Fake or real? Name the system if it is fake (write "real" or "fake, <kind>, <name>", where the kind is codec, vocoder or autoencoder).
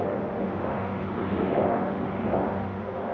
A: fake, autoencoder, DAC-VAE